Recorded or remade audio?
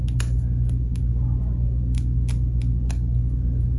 recorded